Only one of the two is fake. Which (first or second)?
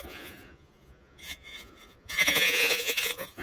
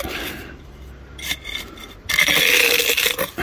first